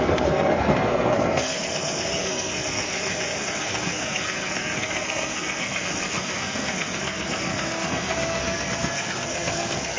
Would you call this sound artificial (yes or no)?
yes